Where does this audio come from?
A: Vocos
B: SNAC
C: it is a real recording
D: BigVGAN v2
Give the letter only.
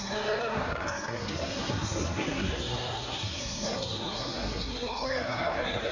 B